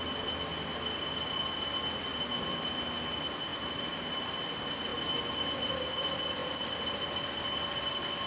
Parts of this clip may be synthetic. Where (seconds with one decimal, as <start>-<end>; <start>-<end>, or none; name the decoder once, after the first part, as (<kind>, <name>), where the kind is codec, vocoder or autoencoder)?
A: 3.5-4.5 (vocoder, BigVGAN v2)